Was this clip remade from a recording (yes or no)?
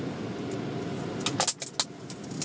no